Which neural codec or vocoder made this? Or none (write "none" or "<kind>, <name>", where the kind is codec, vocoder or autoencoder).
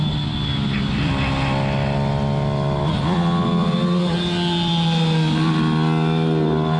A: none